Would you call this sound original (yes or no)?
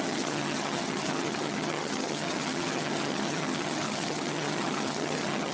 no